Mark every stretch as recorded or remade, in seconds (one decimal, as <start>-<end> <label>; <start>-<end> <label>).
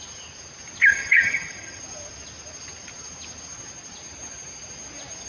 0.0-0.9 recorded; 0.9-1.8 remade; 1.8-5.3 recorded